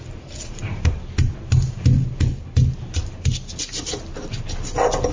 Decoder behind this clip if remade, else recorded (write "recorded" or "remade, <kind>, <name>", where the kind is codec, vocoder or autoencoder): recorded